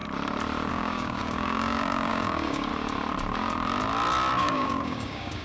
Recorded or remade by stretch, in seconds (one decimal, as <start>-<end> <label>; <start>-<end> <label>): 0.0-0.7 recorded; 0.7-2.7 remade; 2.7-4.4 recorded; 4.4-5.4 remade